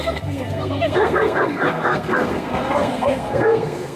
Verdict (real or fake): fake